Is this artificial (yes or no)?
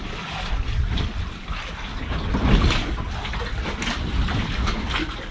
no